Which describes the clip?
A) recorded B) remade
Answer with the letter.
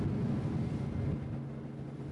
A